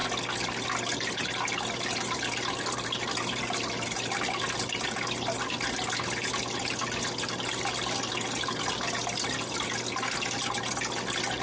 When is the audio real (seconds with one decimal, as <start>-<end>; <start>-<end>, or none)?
0.0-11.4